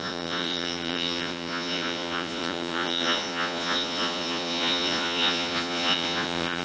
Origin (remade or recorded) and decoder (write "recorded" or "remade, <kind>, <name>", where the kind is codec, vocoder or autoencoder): remade, vocoder, Vocos